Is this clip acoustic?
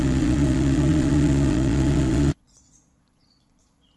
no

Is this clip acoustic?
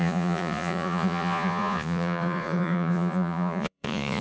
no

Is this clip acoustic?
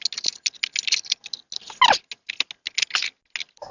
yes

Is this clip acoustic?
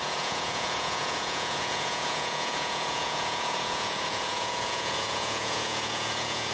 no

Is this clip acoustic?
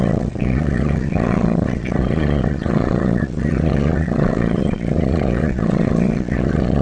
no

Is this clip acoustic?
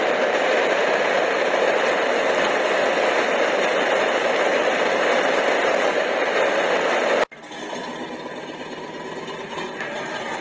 yes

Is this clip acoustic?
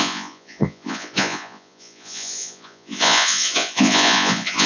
no